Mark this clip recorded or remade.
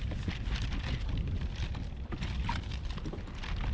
recorded